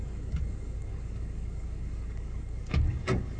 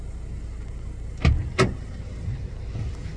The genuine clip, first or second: second